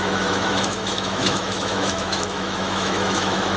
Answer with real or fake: fake